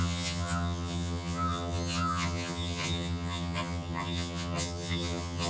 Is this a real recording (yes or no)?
no